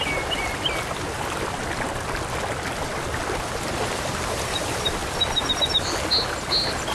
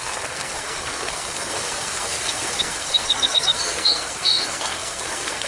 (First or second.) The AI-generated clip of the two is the second